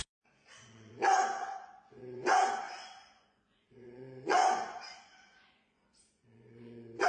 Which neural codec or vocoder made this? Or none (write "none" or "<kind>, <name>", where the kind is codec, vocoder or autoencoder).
vocoder, Vocos